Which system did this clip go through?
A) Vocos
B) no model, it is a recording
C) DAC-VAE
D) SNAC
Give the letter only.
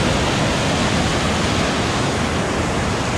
B